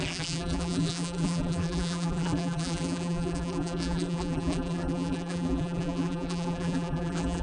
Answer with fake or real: fake